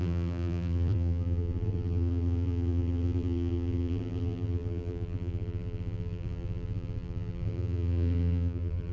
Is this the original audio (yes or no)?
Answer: no